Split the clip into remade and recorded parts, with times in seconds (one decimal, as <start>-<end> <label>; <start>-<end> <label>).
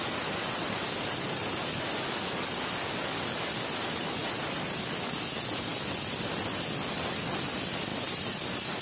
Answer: 0.0-4.2 recorded; 4.2-4.8 remade; 4.8-7.9 recorded; 7.9-8.8 remade